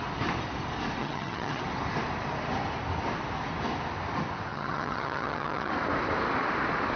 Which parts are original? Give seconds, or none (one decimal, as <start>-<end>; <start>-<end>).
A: 0.0-1.0; 1.6-4.5; 5.7-7.0